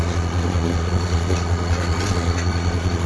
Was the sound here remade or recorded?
remade